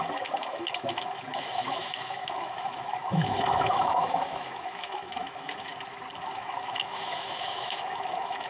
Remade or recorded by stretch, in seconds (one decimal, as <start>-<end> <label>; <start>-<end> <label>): 0.0-5.7 remade; 5.7-6.2 recorded; 6.2-8.5 remade